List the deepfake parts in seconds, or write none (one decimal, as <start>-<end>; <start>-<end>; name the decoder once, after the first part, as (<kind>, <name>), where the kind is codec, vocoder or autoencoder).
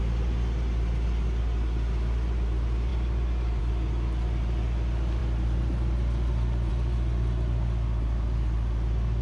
none